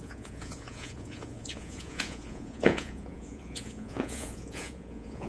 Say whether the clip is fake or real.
fake